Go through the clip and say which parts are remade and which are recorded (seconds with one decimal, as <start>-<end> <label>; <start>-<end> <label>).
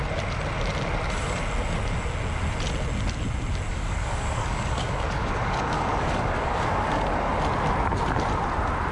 0.0-3.7 recorded; 3.7-7.3 remade; 7.3-8.9 recorded